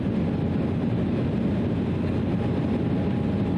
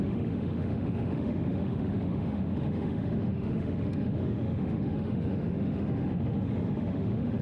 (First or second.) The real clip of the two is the first